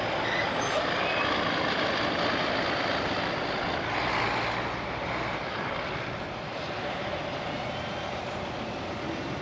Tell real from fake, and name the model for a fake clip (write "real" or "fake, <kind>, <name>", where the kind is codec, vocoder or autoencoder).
real